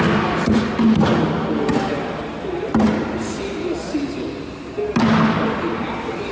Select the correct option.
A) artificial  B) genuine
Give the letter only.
B